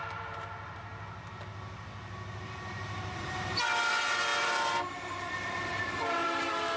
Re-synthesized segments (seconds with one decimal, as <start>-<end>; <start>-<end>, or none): 0.0-0.9; 2.4-6.8